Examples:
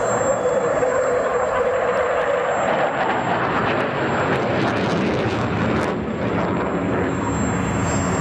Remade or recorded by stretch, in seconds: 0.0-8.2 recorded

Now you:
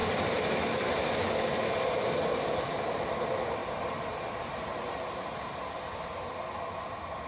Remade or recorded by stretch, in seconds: 0.0-2.6 remade; 2.6-7.3 recorded